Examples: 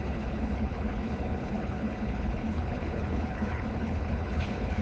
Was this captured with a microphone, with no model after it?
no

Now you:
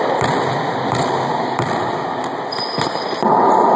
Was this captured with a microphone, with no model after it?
yes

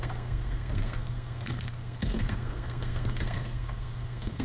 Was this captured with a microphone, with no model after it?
no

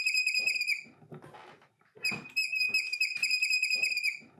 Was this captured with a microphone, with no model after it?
yes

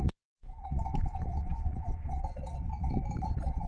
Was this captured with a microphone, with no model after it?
no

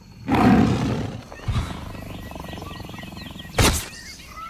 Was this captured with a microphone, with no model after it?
yes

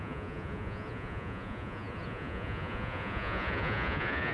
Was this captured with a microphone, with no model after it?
no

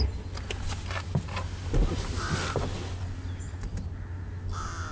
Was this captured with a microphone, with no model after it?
yes